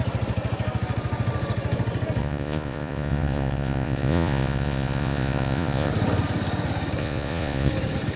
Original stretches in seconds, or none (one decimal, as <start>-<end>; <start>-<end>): 0.0-2.2; 5.9-7.0; 7.7-8.2